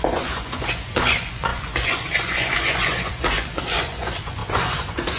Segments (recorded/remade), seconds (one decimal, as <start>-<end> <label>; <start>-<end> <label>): 0.0-5.2 remade